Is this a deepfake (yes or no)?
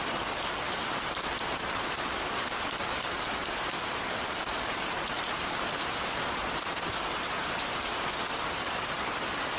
no